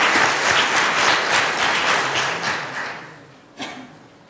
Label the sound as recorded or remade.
recorded